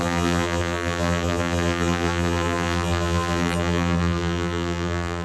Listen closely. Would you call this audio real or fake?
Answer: fake